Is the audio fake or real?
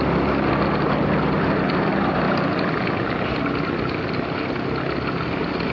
real